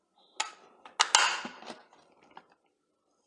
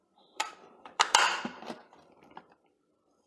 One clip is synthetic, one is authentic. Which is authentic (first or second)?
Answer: first